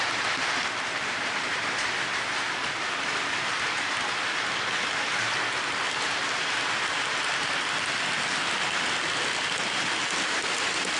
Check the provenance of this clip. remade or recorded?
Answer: recorded